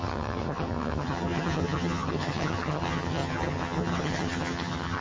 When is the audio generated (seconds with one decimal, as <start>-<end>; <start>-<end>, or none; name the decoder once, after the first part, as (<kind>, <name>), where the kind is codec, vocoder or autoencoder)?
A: 0.0-5.0 (vocoder, HiFi-GAN)